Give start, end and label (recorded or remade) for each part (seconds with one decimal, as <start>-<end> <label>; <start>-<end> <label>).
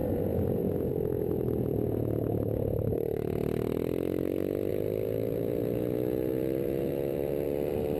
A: 0.0-3.4 remade; 3.4-4.7 recorded; 4.7-8.0 remade